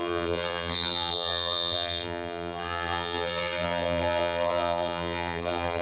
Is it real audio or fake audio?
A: fake